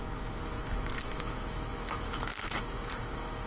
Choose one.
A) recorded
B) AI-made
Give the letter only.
B